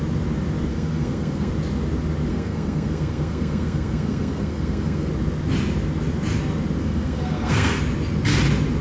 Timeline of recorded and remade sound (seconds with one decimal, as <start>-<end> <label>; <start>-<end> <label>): 0.0-0.7 recorded; 0.7-1.5 remade; 1.5-2.3 recorded; 2.3-5.1 remade; 5.1-6.8 recorded; 6.8-7.8 remade; 7.8-8.8 recorded